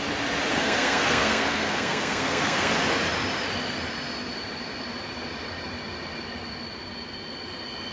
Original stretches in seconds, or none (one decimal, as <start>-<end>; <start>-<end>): 0.0-0.5; 2.7-7.9